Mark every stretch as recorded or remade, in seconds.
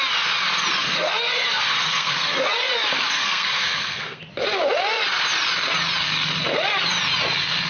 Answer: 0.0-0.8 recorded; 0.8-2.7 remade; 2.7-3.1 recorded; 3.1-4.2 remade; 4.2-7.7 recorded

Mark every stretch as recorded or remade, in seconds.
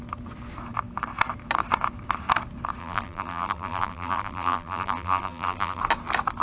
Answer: 0.0-2.8 recorded; 2.8-5.8 remade; 5.8-6.4 recorded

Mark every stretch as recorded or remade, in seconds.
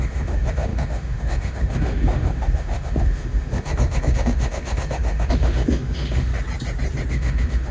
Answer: 0.0-6.3 remade; 6.3-7.1 recorded; 7.1-7.7 remade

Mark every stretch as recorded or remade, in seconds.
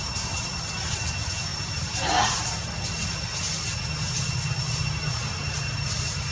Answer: 0.0-6.3 recorded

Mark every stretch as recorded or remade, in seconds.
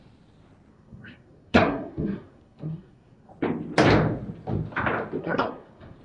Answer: 0.0-0.7 recorded; 0.7-3.3 remade; 3.3-5.2 recorded; 5.2-6.0 remade